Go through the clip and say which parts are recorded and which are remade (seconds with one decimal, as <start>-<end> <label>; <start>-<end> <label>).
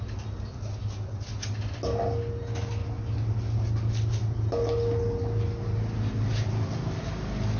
0.0-7.6 recorded